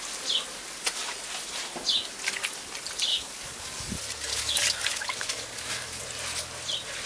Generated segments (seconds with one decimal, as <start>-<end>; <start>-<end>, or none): 3.1-3.9; 4.3-6.0